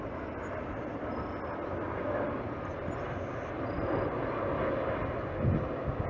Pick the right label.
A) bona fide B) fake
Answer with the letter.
A